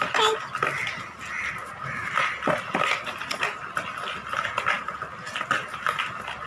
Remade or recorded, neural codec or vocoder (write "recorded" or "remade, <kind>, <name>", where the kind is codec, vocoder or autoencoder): recorded